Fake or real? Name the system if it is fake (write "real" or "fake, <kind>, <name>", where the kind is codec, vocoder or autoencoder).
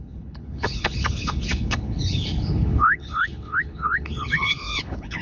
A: fake, codec, HILCodec